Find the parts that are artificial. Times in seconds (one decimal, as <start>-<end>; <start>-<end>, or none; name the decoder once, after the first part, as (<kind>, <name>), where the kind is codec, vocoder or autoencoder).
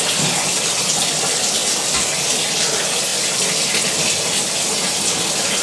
none